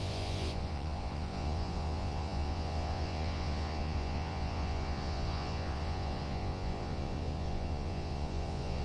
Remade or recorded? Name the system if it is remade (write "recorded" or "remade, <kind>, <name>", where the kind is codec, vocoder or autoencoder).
remade, vocoder, Vocos